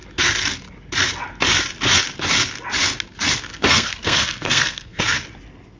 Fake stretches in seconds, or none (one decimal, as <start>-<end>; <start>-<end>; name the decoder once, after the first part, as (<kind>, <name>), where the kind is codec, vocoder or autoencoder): 3.5-5.0 (codec, SNAC)